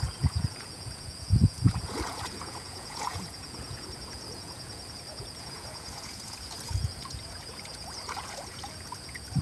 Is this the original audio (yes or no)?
no